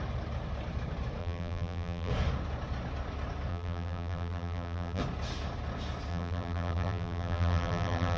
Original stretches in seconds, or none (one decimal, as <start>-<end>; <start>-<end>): 0.0-1.2; 2.1-3.5; 5.0-6.1